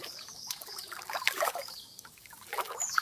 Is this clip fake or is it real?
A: fake